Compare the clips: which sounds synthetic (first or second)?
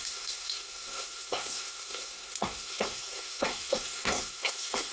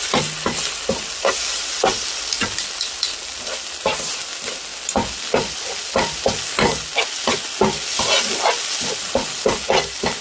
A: first